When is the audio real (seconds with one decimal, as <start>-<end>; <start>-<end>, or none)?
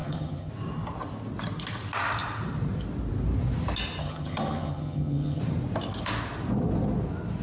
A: 0.5-4.0; 5.4-7.4